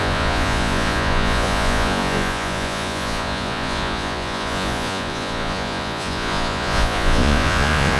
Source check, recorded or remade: remade